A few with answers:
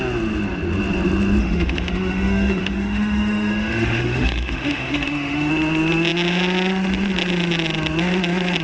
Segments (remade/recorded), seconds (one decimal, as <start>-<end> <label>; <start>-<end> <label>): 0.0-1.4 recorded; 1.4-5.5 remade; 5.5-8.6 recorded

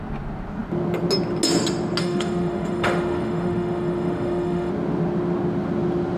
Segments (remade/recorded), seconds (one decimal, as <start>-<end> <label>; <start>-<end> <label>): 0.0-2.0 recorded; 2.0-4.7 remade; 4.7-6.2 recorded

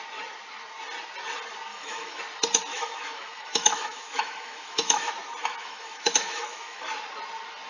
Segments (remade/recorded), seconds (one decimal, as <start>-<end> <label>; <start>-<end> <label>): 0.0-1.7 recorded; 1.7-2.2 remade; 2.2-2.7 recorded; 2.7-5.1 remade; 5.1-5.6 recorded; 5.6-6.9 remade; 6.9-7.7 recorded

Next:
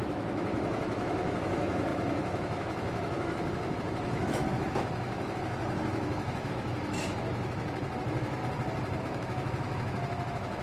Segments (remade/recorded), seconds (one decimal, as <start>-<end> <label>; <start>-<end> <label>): 0.0-8.4 remade; 8.4-9.0 recorded; 9.0-10.6 remade

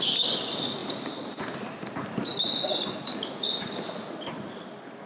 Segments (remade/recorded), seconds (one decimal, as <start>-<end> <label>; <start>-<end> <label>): 0.0-5.1 recorded

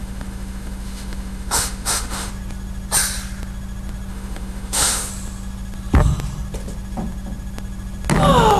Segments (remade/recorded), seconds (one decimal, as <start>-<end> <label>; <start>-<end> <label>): 0.0-2.3 remade; 2.3-4.1 recorded; 4.1-5.1 remade; 5.1-8.6 recorded

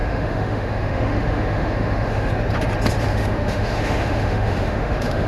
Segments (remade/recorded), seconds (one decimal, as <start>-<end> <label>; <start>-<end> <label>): 0.0-2.3 remade; 2.3-3.1 recorded; 3.1-5.3 remade

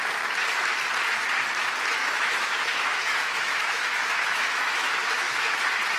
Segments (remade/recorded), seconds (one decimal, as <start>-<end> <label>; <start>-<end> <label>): 0.0-2.0 recorded; 2.0-5.6 remade; 5.6-6.0 recorded